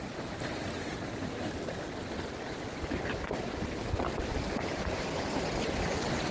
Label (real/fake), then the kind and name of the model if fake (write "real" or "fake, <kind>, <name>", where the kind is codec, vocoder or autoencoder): real